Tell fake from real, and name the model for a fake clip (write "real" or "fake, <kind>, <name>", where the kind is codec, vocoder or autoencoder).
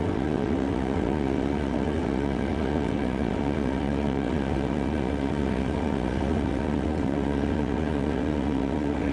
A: fake, vocoder, WaveNeXt